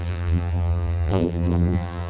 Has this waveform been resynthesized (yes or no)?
yes